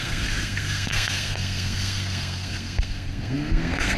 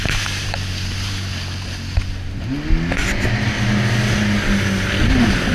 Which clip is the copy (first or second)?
first